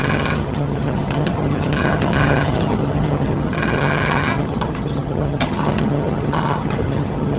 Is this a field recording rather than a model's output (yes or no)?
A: no